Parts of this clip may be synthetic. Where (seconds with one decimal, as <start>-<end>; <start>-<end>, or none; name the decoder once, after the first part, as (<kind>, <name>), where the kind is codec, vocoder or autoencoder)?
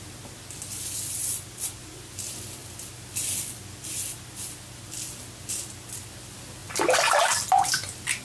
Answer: none